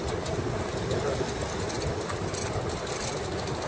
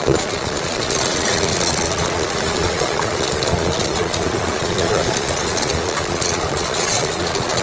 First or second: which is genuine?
first